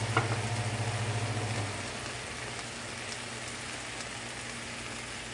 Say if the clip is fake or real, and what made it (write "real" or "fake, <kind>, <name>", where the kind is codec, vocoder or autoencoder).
real